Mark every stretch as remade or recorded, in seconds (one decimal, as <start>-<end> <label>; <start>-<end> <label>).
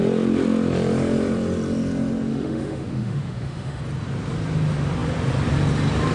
0.0-2.3 recorded; 2.3-3.8 remade; 3.8-6.1 recorded